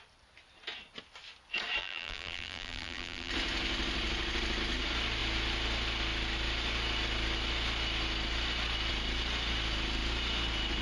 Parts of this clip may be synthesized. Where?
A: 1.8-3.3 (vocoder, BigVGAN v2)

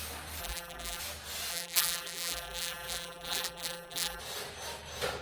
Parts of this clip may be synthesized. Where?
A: 0.4-1.0 (vocoder, BigVGAN v2); 1.5-4.2

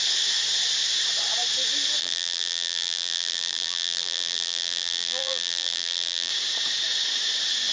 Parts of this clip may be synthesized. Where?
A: 2.0-6.3 (vocoder, BigVGAN v2)

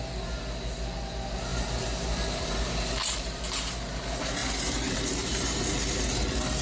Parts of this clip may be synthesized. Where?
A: 1.5-4.0 (vocoder, BigVGAN v2); 4.4-5.6

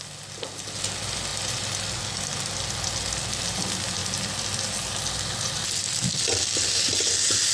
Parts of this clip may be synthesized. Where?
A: none

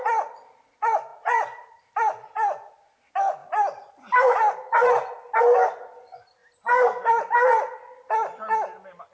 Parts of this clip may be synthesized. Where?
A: 3.4-5.4 (vocoder, BigVGAN v2)

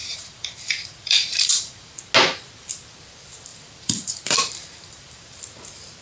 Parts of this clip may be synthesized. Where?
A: 0.0-2.0 (vocoder, BigVGAN v2); 3.5-5.4

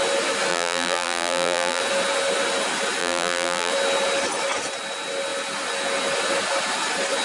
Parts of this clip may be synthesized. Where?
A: 0.5-1.8 (vocoder, BigVGAN v2); 3.0-3.7